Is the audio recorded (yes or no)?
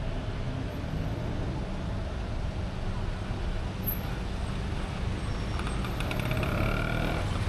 yes